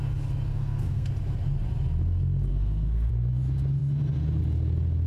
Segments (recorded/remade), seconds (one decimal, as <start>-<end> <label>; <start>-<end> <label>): 0.0-0.5 recorded; 0.5-1.1 remade; 1.1-2.5 recorded; 2.5-3.1 remade; 3.1-5.1 recorded